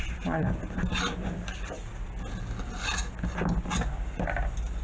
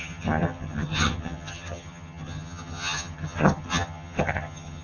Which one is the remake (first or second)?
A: second